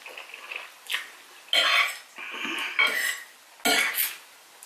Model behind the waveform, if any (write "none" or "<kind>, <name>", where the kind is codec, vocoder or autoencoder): none